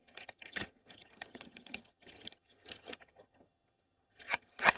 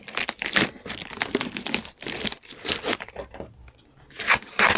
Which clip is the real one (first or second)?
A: second